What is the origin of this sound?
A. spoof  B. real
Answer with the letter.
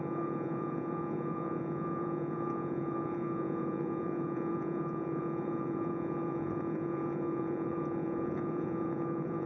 A